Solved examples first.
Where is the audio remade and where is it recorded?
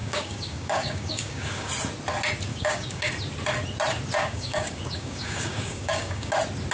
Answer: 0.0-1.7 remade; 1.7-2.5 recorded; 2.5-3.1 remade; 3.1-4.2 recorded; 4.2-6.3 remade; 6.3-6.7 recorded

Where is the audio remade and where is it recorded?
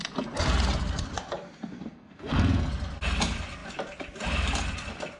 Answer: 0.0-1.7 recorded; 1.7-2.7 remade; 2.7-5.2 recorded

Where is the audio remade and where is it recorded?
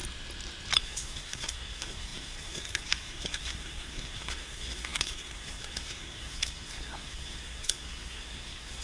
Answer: 0.0-0.8 recorded; 0.8-8.8 remade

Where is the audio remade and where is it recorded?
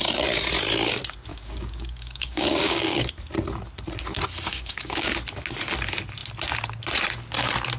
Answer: 0.0-1.3 recorded; 1.3-3.1 remade; 3.1-4.5 recorded; 4.5-5.1 remade; 5.1-7.8 recorded